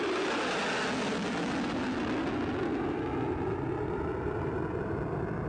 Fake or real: real